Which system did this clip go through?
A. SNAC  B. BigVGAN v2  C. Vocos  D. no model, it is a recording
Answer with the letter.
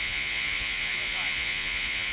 C